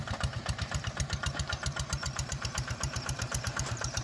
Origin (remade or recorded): remade